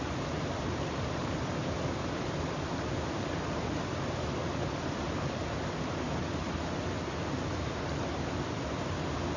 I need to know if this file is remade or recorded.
recorded